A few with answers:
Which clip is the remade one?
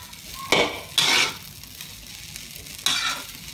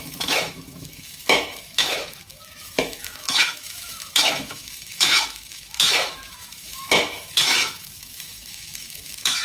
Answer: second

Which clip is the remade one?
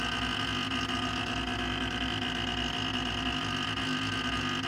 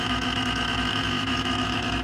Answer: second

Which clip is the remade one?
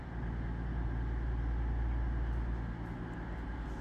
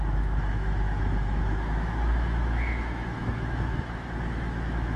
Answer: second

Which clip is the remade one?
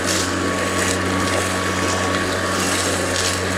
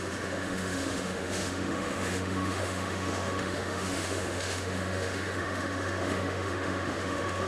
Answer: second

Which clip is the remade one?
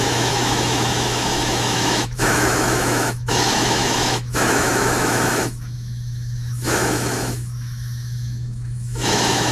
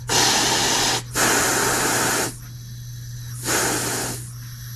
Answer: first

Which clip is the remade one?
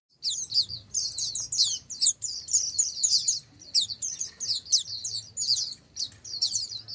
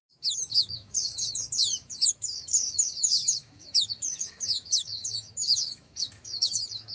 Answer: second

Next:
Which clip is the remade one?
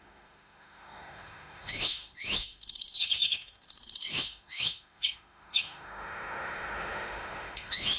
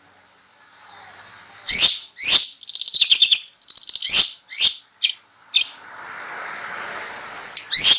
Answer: first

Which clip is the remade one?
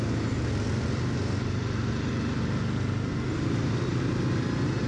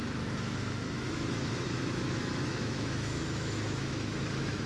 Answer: second